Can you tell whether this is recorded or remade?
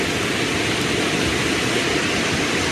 recorded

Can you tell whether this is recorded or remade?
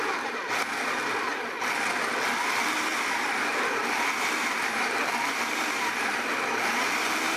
recorded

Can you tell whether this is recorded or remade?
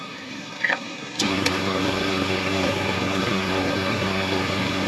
remade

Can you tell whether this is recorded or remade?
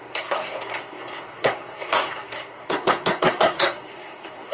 remade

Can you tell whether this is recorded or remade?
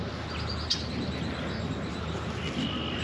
recorded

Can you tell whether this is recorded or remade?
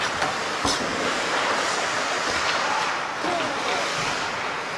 recorded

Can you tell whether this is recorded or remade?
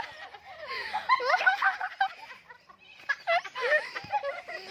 recorded